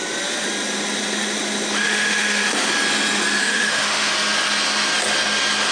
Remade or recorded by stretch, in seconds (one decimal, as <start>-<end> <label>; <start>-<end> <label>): 0.0-1.8 recorded; 1.8-2.7 remade; 2.7-3.4 recorded; 3.4-4.1 remade; 4.1-5.7 recorded